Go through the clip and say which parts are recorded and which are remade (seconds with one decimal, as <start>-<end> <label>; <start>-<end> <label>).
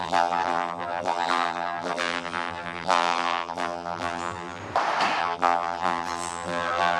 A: 0.0-4.6 remade; 4.6-5.2 recorded; 5.2-7.0 remade